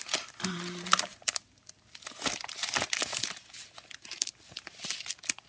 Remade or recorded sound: recorded